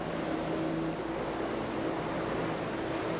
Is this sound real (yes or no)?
yes